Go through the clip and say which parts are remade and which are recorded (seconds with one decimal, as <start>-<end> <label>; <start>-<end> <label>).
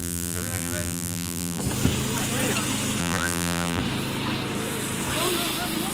0.0-1.6 remade; 1.6-3.0 recorded; 3.0-3.8 remade; 3.8-5.9 recorded